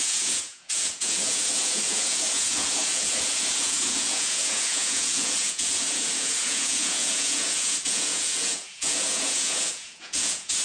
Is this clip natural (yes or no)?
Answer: no